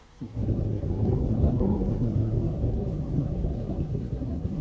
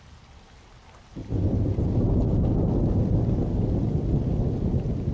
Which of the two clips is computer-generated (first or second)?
first